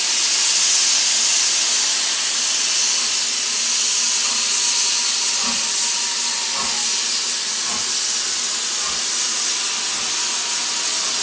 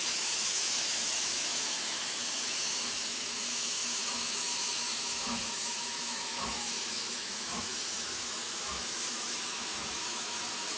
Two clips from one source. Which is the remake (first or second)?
second